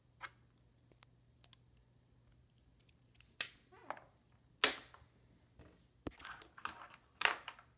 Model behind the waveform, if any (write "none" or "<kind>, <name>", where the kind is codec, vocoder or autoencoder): none